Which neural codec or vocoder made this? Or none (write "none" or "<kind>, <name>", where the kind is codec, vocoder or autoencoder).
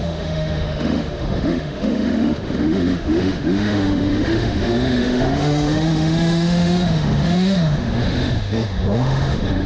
autoencoder, DAC-VAE